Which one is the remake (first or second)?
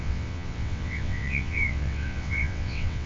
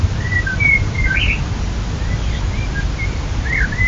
first